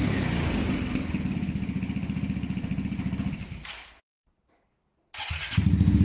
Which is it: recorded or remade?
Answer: recorded